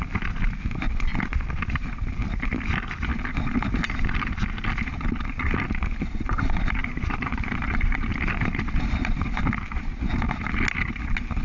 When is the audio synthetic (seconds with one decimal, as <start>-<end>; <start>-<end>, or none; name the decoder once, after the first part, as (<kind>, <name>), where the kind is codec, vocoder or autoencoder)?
6.8-8.3 (vocoder, BigVGAN v2)